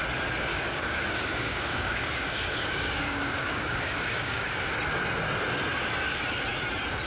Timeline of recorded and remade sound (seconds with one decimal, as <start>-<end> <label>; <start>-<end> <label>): 0.0-0.5 recorded; 0.5-4.7 remade; 4.7-7.1 recorded